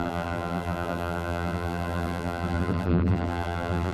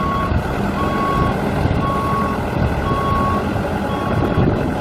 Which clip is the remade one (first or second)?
first